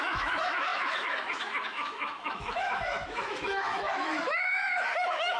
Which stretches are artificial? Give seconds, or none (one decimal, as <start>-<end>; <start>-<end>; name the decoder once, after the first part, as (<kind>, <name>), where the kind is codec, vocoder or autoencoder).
0.0-5.4 (autoencoder, DAC-VAE)